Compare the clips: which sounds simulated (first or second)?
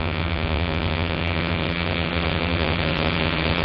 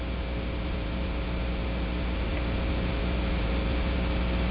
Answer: first